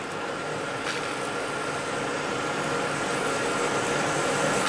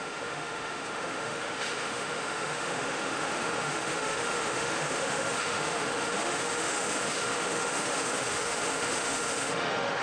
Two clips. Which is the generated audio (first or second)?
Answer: second